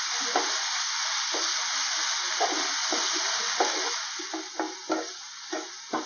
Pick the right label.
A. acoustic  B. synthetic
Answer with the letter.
A